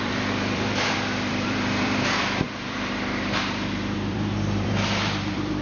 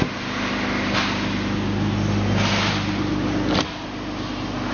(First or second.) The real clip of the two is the second